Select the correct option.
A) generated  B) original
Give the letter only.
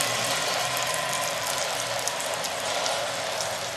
A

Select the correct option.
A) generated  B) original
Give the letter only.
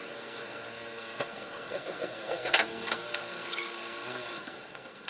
A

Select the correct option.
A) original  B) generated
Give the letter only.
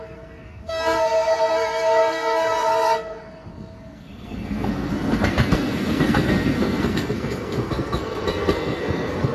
B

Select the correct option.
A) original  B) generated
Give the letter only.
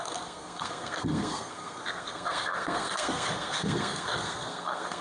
B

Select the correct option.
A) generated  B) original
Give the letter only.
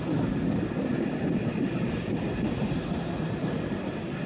B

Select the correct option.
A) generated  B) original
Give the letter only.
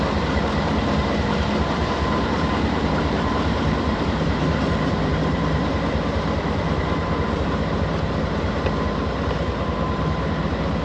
A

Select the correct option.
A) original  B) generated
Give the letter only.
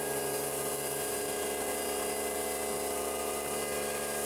B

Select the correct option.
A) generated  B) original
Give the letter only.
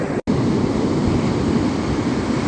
B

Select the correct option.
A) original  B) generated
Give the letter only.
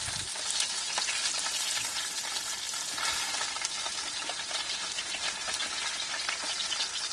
A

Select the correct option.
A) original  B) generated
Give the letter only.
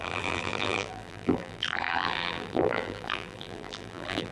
B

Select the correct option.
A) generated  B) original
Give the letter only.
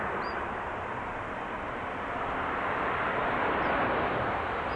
B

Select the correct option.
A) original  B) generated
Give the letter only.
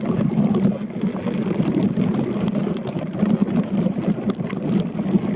A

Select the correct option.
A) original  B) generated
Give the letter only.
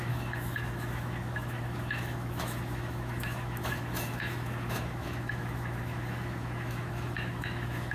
B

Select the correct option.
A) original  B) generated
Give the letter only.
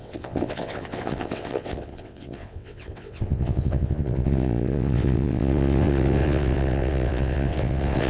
B